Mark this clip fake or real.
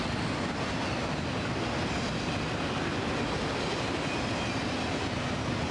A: real